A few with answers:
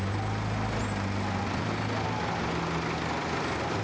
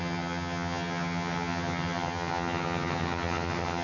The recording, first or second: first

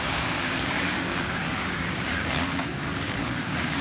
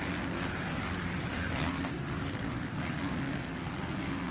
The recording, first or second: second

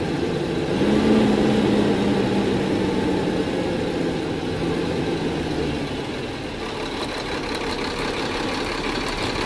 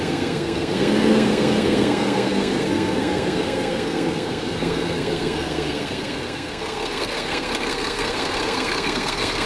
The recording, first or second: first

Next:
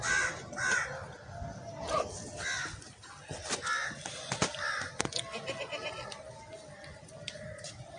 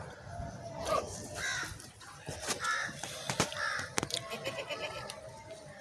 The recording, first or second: first